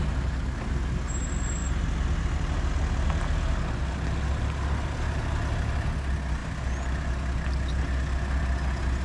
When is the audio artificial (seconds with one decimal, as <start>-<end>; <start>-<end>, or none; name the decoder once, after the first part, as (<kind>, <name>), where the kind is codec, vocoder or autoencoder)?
none